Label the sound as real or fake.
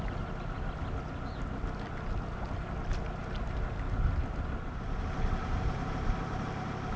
real